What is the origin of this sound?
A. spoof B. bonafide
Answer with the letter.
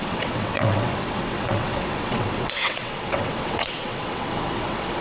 A